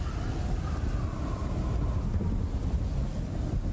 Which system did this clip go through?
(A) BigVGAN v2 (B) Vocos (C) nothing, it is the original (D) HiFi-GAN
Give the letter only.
C